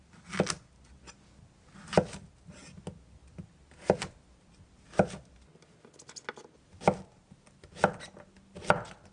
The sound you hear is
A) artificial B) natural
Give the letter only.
B